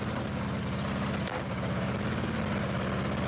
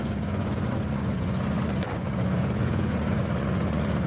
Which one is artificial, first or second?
second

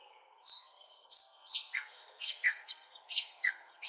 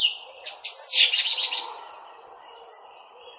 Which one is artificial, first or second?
first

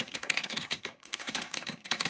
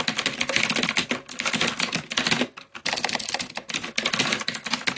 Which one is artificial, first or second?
first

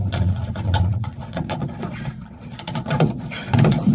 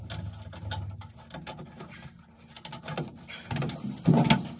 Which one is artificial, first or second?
first